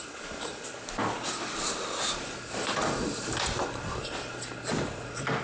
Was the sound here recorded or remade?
recorded